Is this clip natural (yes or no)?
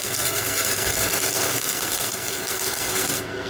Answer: no